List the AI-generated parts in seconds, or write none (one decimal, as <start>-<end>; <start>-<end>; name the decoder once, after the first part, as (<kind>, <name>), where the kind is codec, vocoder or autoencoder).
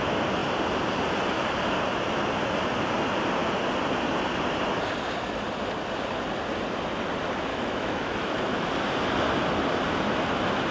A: 7.5-8.7 (autoencoder, DAC-VAE)